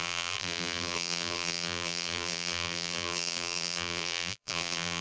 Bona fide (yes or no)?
no